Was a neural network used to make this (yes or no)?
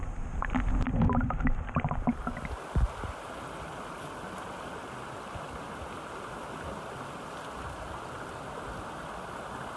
no